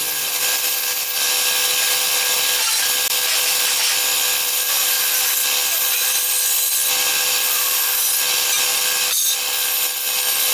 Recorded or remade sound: recorded